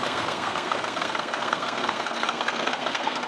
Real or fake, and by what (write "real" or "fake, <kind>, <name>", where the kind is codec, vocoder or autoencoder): fake, codec, SNAC